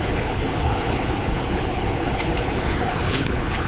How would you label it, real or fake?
fake